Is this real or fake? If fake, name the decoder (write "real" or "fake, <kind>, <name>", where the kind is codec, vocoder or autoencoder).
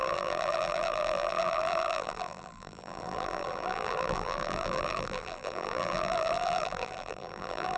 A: fake, vocoder, BigVGAN v2